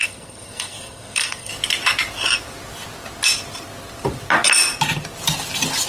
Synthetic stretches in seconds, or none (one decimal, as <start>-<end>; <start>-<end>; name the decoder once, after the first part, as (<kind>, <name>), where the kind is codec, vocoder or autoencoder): 0.0-1.5 (codec, SNAC)